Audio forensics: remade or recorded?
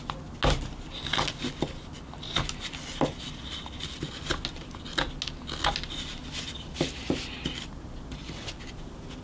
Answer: recorded